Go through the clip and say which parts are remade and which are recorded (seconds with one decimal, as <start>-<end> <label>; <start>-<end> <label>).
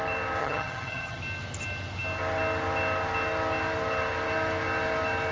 0.0-0.4 recorded; 0.4-1.2 remade; 1.2-5.3 recorded